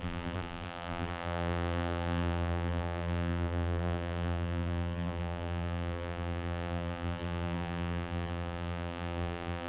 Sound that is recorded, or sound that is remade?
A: remade